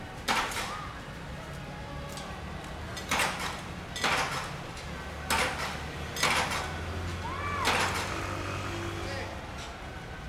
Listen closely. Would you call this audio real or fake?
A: real